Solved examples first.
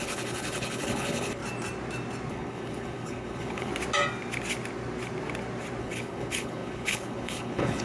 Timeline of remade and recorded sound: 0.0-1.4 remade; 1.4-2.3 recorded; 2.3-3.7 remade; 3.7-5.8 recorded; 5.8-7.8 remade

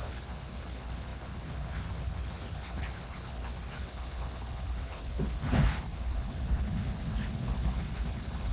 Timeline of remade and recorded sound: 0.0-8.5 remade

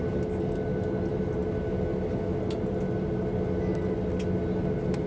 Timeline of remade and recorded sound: 0.0-5.1 recorded

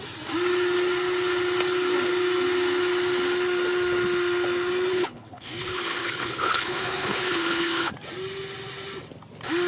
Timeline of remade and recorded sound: 0.0-4.9 recorded; 4.9-7.9 remade; 7.9-9.7 recorded